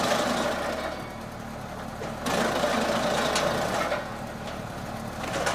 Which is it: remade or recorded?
recorded